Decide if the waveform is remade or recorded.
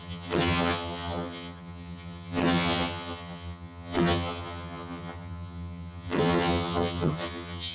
remade